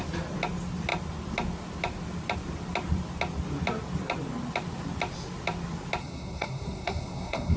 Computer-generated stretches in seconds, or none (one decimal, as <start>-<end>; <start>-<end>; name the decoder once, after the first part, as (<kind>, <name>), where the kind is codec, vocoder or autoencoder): 6.0-7.6 (codec, SNAC)